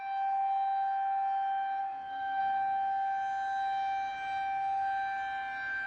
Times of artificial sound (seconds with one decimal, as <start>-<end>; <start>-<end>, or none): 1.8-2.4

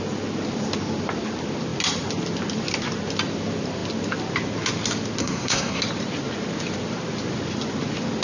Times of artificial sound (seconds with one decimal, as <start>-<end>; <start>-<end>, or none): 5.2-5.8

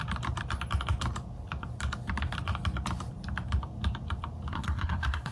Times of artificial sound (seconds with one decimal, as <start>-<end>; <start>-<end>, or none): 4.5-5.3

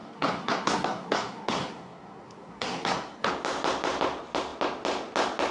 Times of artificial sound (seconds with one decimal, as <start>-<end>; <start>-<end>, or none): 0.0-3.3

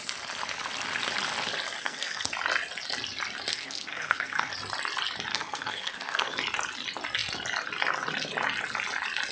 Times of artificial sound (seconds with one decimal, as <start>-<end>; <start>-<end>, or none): 1.8-2.3; 3.5-4.5; 5.3-6.4

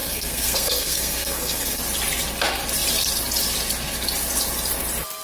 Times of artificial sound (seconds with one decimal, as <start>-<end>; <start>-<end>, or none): 0.0-1.8